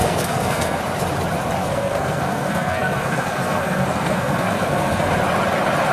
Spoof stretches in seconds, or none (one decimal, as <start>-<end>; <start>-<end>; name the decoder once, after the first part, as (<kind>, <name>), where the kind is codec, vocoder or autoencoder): 0.0-0.8 (codec, SNAC); 1.6-5.1